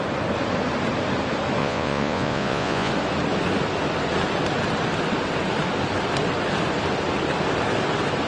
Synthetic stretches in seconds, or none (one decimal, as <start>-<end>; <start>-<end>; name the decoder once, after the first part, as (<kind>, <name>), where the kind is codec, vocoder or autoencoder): 1.6-2.9 (vocoder, Vocos)